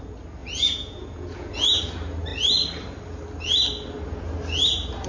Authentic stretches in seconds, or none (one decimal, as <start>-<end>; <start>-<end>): 0.0-0.4; 1.8-5.1